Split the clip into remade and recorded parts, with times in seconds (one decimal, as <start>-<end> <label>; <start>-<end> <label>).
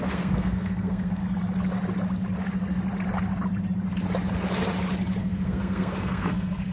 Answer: 0.0-1.2 remade; 1.2-5.2 recorded; 5.2-6.7 remade